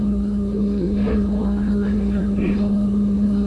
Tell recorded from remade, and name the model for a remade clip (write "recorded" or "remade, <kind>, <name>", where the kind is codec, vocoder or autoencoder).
remade, codec, SNAC